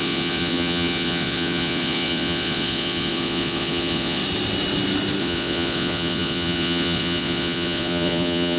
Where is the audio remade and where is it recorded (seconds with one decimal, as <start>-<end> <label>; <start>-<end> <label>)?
0.0-4.2 remade; 4.2-5.2 recorded; 5.2-8.6 remade